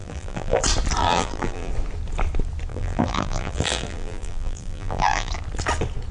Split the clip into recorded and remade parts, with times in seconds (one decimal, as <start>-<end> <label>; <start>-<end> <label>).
0.0-0.6 remade; 0.6-1.0 recorded; 1.0-1.7 remade; 1.7-2.7 recorded; 2.7-5.3 remade; 5.3-6.1 recorded